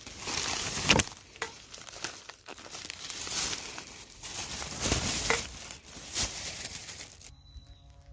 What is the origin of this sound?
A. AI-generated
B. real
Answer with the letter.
A